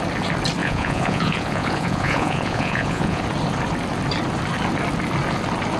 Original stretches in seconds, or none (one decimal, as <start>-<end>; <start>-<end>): 0.0-0.6; 3.2-5.8